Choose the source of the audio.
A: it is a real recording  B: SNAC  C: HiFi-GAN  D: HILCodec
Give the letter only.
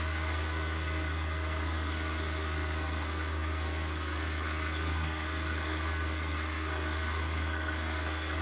B